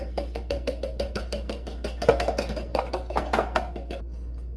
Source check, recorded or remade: remade